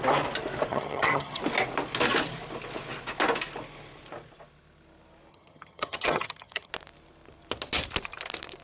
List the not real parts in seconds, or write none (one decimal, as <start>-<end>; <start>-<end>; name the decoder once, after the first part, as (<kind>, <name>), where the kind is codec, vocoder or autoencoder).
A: 0.7-1.4 (vocoder, HiFi-GAN); 5.3-6.7